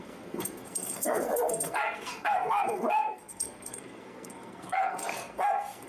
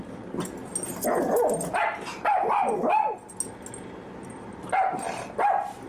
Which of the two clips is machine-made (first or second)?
first